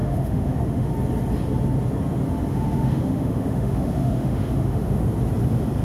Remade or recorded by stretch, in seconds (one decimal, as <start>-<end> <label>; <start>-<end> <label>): 0.0-0.9 remade; 0.9-2.5 recorded; 2.5-5.0 remade; 5.0-5.8 recorded